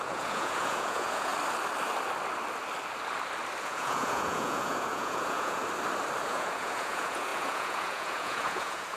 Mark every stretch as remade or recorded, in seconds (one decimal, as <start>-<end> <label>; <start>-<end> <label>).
0.0-1.3 remade; 1.3-3.6 recorded; 3.6-5.6 remade; 5.6-6.2 recorded; 6.2-9.0 remade